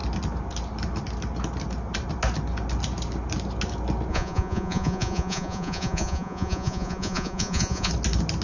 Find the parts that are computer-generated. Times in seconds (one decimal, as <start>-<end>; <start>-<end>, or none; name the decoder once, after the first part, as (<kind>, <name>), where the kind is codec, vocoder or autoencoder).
4.1-7.9 (vocoder, Vocos)